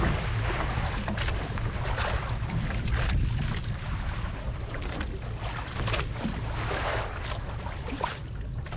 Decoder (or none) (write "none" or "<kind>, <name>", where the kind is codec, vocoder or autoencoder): none